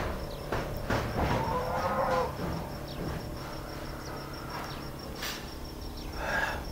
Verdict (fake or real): real